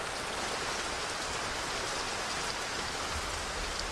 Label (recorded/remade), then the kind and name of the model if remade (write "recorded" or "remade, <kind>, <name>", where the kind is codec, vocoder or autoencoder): recorded